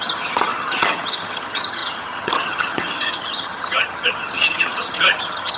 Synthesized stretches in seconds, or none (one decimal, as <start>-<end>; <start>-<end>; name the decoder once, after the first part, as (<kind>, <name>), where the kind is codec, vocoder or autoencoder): 0.0-5.6 (vocoder, HiFi-GAN)